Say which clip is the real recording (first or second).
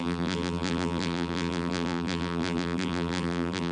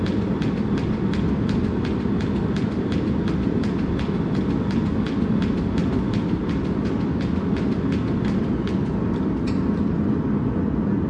second